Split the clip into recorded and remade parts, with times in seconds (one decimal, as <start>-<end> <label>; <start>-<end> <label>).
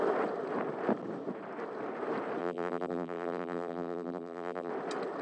0.0-2.4 recorded; 2.4-4.7 remade; 4.7-5.2 recorded